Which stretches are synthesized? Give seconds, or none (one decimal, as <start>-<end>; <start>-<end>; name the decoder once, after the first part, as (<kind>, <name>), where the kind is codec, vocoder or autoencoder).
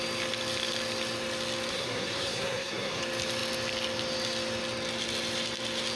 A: 1.7-3.0 (codec, SNAC)